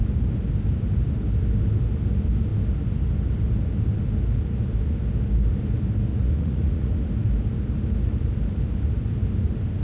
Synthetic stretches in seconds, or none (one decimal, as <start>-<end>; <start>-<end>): 6.1-6.9